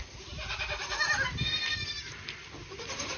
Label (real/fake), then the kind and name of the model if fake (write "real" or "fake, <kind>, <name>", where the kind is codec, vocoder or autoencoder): real